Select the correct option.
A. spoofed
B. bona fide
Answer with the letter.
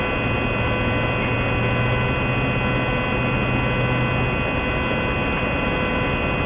B